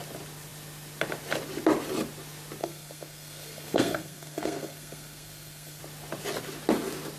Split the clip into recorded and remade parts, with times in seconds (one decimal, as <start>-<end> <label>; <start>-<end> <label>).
0.0-2.6 recorded; 2.6-5.8 remade; 5.8-7.2 recorded

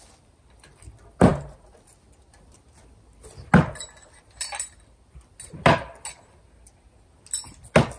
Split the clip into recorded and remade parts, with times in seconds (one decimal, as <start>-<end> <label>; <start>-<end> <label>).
0.0-8.0 recorded

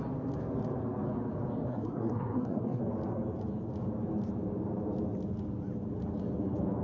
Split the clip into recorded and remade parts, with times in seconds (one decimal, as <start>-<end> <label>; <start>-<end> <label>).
0.0-1.7 recorded; 1.7-2.8 remade; 2.8-6.8 recorded

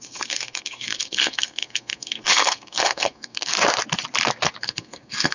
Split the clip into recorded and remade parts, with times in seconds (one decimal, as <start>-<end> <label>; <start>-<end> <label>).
0.0-3.5 remade; 3.5-4.6 recorded; 4.6-5.3 remade

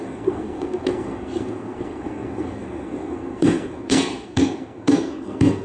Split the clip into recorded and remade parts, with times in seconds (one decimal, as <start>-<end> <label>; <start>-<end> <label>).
0.0-5.6 remade

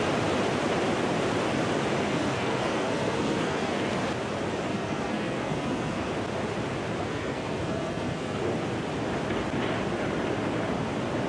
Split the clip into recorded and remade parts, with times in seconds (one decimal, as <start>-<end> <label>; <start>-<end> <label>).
0.0-2.1 recorded; 2.1-3.9 remade; 3.9-4.7 recorded; 4.7-6.1 remade; 6.1-7.0 recorded; 7.0-8.4 remade; 8.4-11.3 recorded

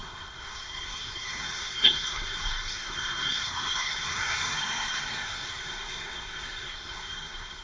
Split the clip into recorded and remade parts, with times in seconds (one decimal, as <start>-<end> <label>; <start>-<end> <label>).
0.0-7.6 remade